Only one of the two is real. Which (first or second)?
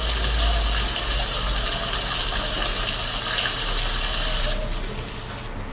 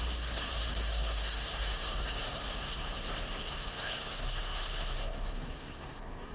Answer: first